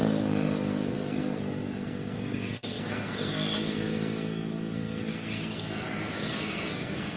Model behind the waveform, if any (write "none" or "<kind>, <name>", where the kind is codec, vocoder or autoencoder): codec, SNAC